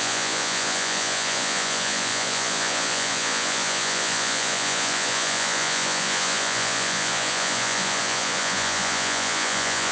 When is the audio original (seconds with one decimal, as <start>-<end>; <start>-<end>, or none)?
none